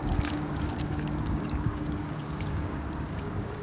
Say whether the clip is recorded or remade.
remade